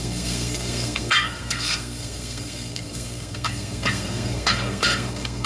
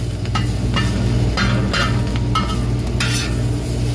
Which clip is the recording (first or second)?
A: second